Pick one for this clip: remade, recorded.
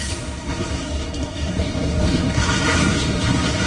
remade